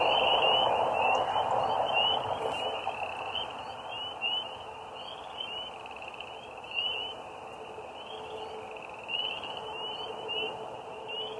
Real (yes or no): yes